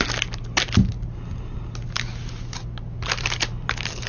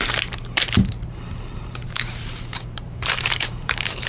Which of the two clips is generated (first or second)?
second